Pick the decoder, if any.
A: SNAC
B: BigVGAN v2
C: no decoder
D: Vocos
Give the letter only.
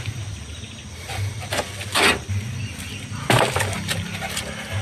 B